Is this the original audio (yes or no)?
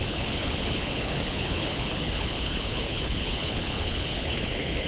no